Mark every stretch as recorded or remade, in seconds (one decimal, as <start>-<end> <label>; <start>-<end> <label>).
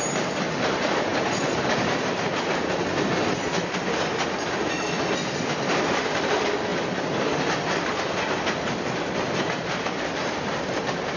0.0-6.7 remade; 6.7-10.0 recorded; 10.0-11.2 remade